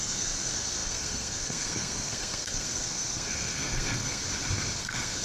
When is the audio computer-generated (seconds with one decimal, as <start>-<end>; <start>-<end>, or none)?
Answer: 0.0-4.2; 4.8-5.2